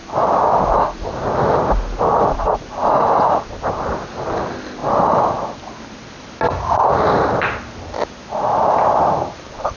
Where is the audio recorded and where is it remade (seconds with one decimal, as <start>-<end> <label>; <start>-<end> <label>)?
0.0-9.8 recorded